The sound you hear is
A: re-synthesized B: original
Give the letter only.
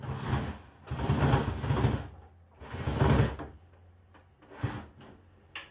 B